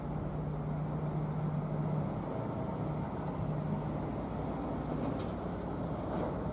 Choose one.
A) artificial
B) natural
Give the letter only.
B